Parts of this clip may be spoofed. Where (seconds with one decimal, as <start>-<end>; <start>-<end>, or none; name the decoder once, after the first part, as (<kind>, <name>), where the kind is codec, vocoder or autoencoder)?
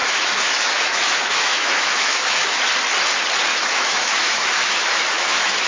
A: 0.0-2.6 (autoencoder, DAC-VAE); 3.5-5.7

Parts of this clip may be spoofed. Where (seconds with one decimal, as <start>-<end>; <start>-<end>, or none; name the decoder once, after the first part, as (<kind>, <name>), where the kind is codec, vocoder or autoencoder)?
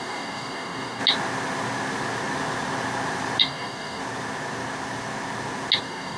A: 0.0-1.0 (codec, DAC); 3.4-4.0; 5.8-6.2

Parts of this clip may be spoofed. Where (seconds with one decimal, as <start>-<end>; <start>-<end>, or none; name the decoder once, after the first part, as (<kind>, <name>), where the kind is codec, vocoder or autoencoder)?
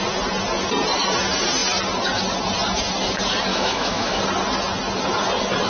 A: 3.5-4.2 (autoencoder, DAC-VAE)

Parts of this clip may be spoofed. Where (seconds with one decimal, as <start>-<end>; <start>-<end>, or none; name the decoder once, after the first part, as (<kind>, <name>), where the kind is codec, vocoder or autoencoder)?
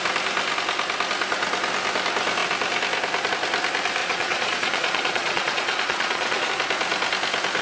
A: 4.0-6.5 (vocoder, Vocos)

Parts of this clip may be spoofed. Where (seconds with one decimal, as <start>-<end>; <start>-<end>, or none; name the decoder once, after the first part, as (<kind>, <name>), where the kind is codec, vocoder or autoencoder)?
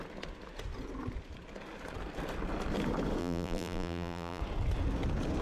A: 3.2-4.4 (vocoder, BigVGAN v2)